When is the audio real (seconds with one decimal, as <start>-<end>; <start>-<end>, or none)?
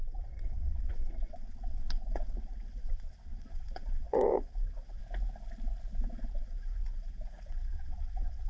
5.0-6.3